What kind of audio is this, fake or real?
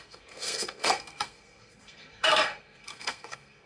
fake